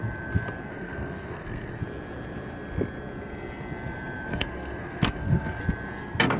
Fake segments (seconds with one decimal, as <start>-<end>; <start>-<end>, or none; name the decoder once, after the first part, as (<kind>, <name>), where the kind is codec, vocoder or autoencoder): 0.7-1.8 (codec, SNAC); 4.3-5.6